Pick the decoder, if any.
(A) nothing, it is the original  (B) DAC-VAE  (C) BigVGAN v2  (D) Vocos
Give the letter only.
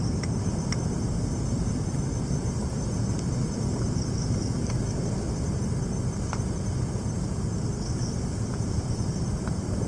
A